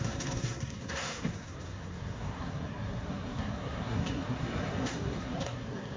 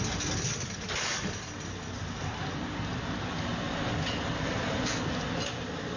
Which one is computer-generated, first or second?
first